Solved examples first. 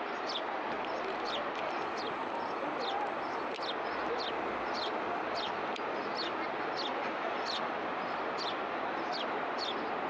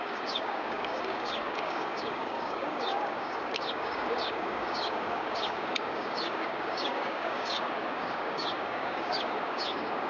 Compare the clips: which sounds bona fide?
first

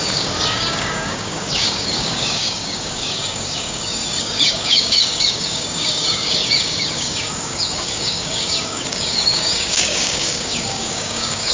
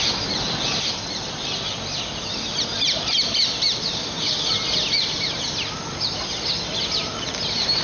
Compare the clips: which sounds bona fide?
second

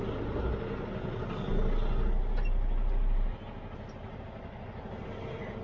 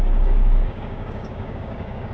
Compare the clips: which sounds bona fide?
first